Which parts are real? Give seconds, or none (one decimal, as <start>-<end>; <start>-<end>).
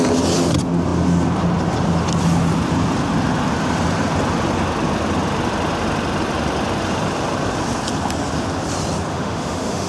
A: 0.0-9.1